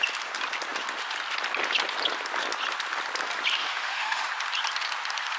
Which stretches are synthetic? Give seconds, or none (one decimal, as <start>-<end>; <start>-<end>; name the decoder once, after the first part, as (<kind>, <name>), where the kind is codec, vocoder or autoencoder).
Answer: 3.6-4.3 (autoencoder, DAC-VAE)